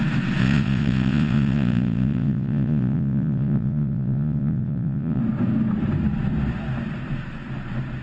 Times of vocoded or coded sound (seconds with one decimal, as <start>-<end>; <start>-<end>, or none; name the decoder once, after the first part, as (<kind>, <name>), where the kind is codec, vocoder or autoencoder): 0.4-5.2 (vocoder, Vocos)